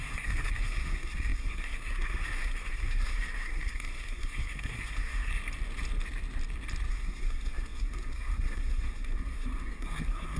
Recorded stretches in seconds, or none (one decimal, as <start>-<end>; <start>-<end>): 5.3-6.9